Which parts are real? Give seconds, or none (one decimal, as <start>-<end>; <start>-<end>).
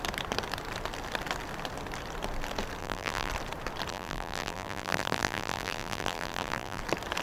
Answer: 0.0-2.8; 3.3-3.9; 6.8-7.2